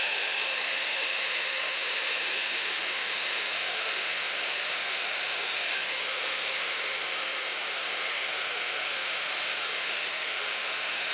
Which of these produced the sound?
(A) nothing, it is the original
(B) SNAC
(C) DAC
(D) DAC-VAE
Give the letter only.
D